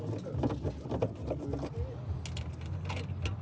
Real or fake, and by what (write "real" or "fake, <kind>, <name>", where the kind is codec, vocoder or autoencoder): real